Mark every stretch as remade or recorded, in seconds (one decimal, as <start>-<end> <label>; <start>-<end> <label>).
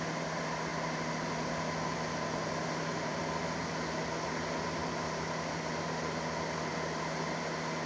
0.0-7.9 recorded